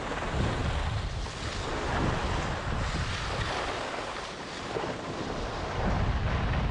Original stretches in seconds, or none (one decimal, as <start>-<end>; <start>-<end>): 0.0-6.7

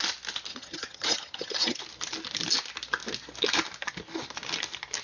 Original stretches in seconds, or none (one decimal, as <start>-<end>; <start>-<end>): 0.0-0.5; 1.8-5.0

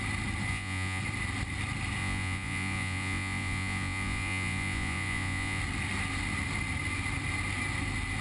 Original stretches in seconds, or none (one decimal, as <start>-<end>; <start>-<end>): 0.0-0.5; 1.0-2.0; 5.6-8.2

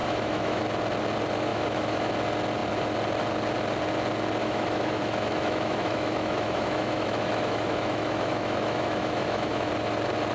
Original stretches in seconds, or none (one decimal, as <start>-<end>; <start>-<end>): 0.6-1.5; 2.1-4.4; 9.7-10.3

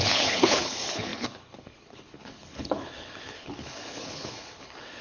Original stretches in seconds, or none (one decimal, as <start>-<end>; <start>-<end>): none